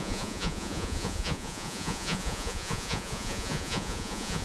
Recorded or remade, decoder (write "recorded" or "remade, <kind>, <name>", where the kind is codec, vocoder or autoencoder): remade, vocoder, Vocos